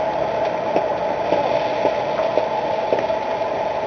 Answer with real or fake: real